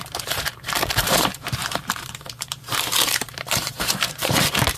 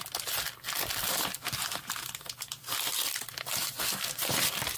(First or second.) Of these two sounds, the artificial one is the first